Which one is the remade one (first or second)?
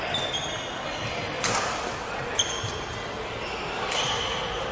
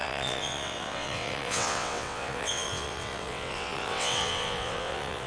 second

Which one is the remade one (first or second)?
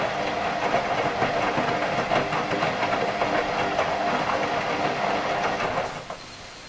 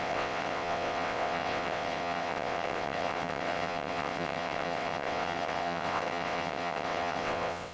second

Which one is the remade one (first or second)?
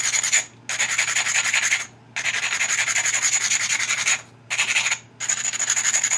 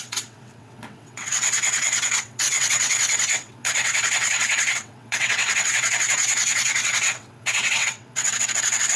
second